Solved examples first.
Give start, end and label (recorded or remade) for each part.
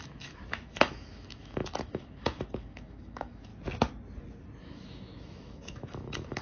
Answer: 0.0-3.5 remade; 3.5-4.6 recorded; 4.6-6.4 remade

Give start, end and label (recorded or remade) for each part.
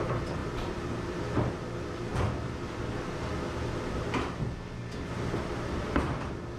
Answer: 0.0-0.4 recorded; 0.4-1.2 remade; 1.2-6.6 recorded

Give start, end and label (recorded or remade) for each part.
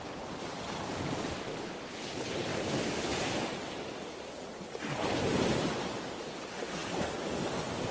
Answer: 0.0-7.9 recorded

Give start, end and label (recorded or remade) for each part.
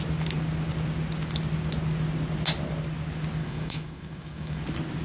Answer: 0.0-3.4 recorded; 3.4-4.6 remade; 4.6-5.0 recorded